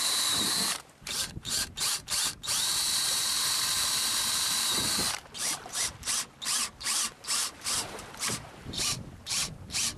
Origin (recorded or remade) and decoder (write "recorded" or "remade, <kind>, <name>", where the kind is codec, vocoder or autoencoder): remade, vocoder, BigVGAN v2